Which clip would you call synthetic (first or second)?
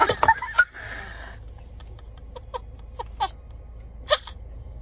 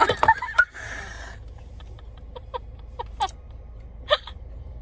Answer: second